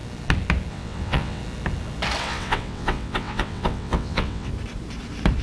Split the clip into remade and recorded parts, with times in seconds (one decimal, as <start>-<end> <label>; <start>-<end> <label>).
0.0-0.7 recorded; 0.7-1.4 remade; 1.4-2.2 recorded; 2.2-4.5 remade; 4.5-5.4 recorded